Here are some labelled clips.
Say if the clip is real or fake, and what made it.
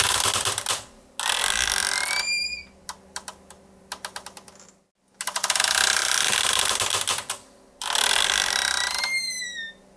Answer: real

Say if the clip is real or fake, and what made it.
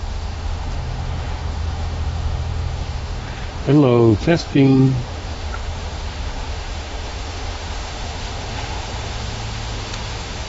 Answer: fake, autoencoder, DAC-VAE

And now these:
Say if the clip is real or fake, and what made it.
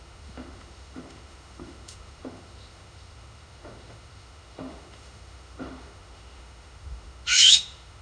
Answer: fake, autoencoder, DAC-VAE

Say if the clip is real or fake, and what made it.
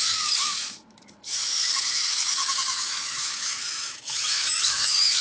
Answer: fake, autoencoder, DAC-VAE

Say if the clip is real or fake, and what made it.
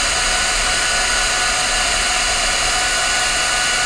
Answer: real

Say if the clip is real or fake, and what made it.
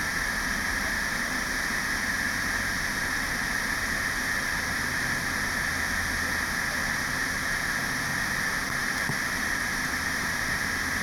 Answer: real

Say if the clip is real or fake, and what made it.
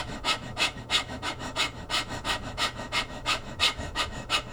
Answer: fake, autoencoder, DAC-VAE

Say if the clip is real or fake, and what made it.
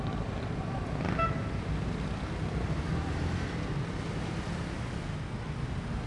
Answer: real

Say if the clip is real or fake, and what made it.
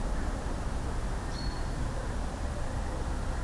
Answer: real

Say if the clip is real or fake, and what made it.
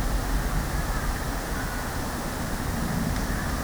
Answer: real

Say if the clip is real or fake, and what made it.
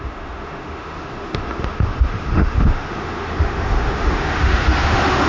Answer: fake, autoencoder, DAC-VAE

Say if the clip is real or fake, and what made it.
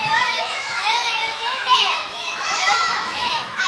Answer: fake, autoencoder, DAC-VAE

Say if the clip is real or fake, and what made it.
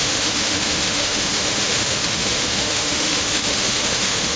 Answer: fake, autoencoder, DAC-VAE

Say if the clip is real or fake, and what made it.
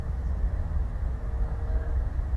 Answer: fake, autoencoder, DAC-VAE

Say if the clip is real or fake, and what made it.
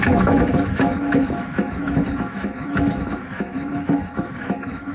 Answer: fake, autoencoder, DAC-VAE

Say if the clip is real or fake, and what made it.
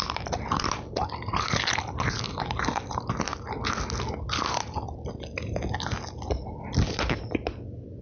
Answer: real